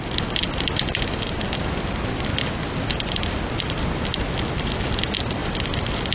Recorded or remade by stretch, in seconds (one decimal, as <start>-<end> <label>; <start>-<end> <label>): 0.0-2.3 recorded; 2.3-4.0 remade; 4.0-5.4 recorded; 5.4-6.1 remade